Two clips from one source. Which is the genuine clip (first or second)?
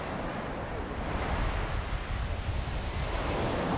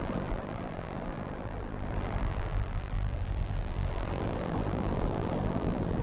first